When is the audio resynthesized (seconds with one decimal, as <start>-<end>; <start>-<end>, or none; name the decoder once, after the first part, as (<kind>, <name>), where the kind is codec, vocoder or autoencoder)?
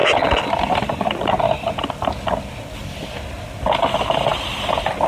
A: none